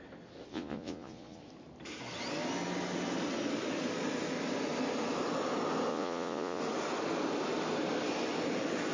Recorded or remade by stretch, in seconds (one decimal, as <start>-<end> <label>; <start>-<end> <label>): 0.0-0.5 recorded; 0.5-1.4 remade; 1.4-5.9 recorded; 5.9-6.6 remade; 6.6-8.9 recorded